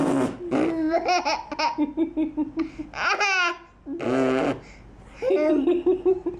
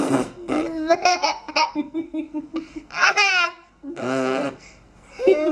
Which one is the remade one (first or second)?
second